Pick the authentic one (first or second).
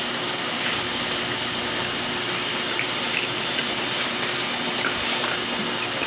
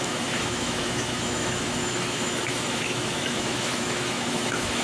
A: first